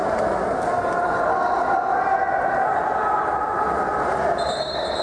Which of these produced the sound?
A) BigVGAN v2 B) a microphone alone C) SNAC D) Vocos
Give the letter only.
B